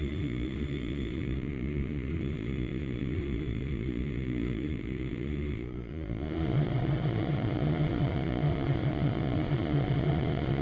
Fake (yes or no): yes